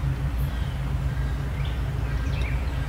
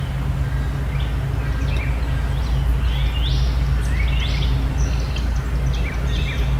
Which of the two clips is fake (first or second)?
first